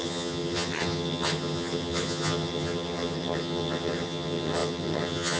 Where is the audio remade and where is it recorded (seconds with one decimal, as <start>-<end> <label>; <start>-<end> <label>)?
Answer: 0.0-5.4 remade